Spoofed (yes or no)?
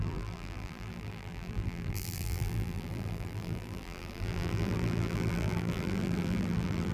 yes